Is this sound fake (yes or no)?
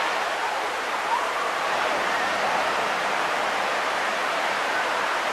yes